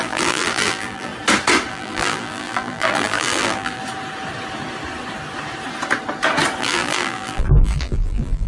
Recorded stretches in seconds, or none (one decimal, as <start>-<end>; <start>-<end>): 1.1-1.7; 3.8-6.6